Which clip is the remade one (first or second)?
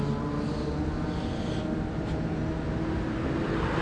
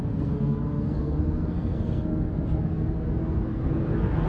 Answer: second